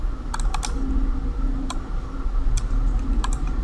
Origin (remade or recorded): recorded